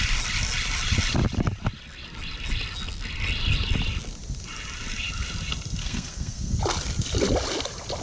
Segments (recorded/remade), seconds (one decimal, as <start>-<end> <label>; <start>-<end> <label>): 0.0-5.8 recorded; 5.8-6.6 remade; 6.6-8.0 recorded